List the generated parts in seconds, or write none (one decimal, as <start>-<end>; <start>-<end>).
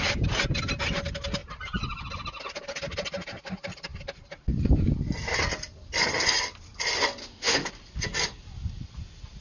7.2-7.7